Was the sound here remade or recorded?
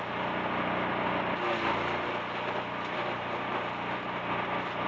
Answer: recorded